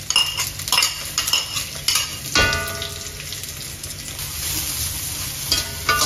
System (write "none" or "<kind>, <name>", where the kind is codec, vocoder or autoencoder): none